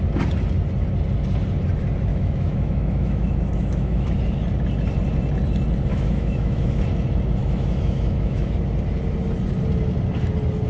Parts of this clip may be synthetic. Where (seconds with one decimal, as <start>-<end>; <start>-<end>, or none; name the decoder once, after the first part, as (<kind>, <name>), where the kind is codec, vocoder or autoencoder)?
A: 2.1-4.1 (autoencoder, DAC-VAE); 5.9-6.8; 7.4-8.5